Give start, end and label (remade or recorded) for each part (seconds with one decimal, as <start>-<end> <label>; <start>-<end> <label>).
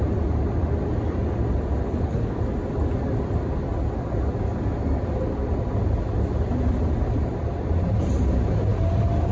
0.0-1.8 recorded; 1.8-2.4 remade; 2.4-9.3 recorded